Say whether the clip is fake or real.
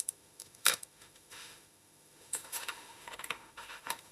fake